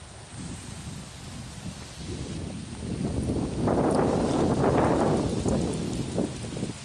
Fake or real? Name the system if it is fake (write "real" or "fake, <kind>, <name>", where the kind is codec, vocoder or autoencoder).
real